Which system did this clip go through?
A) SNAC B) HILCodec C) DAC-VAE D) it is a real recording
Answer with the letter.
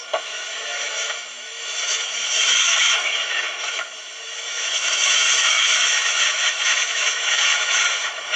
C